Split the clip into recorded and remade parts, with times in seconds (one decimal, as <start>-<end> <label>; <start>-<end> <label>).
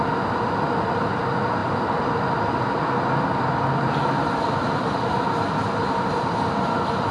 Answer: 0.0-7.1 recorded